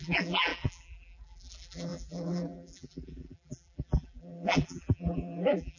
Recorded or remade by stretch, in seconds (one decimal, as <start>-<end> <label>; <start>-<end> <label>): 0.0-5.8 remade